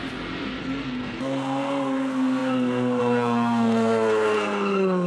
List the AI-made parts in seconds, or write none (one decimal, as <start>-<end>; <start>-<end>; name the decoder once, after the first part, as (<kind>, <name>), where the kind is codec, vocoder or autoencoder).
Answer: 0.6-5.1 (codec, SNAC)